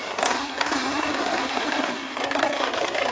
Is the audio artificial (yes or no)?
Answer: yes